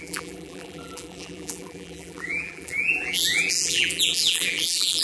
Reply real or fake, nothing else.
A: fake